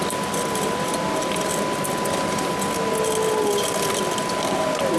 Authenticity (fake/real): real